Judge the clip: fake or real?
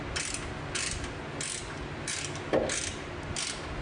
real